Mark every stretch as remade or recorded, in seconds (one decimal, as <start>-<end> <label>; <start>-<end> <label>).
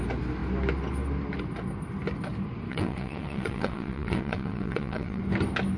0.0-2.7 recorded; 2.7-5.2 remade; 5.2-5.8 recorded